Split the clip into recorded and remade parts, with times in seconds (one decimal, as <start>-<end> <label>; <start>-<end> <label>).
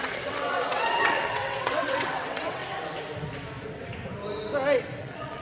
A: 0.0-2.6 remade; 2.6-5.0 recorded; 5.0-5.4 remade